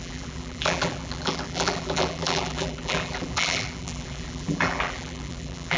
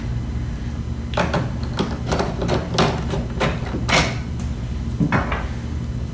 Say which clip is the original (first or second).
second